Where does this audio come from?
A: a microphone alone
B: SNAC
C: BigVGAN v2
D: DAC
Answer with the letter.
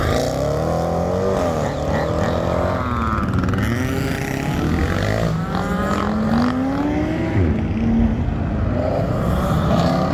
A